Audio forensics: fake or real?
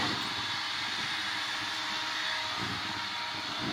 real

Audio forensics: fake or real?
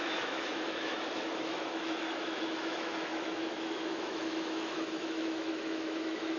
fake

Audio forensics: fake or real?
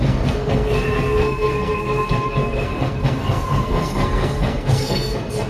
fake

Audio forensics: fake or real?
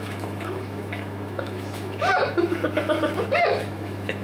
fake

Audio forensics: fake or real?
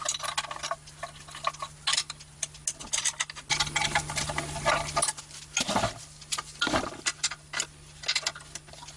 real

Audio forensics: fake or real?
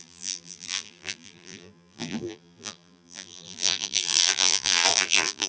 fake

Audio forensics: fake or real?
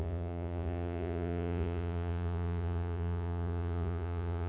fake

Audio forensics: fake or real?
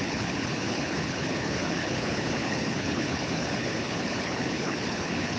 fake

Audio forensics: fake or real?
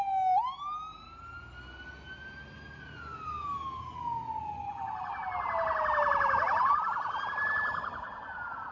real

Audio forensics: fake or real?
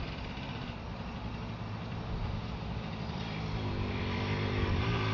fake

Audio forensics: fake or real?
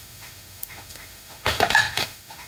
fake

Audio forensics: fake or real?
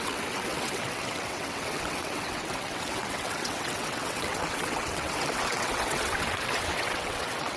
fake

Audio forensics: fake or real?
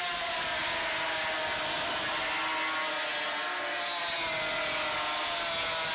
real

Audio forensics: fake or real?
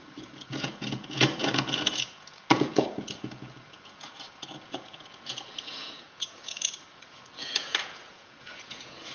fake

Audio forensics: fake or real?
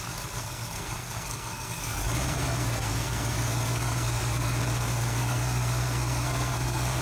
fake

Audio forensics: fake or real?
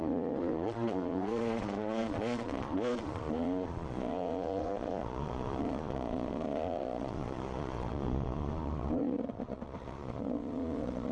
fake